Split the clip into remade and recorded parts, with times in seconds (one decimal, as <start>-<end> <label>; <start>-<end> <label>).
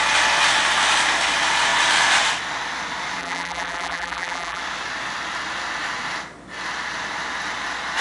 0.0-3.2 recorded; 3.2-4.6 remade; 4.6-8.0 recorded